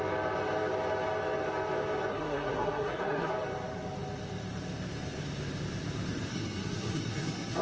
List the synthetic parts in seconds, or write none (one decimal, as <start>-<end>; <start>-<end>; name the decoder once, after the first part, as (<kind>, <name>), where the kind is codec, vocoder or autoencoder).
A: 2.1-3.3 (codec, SNAC); 6.3-7.6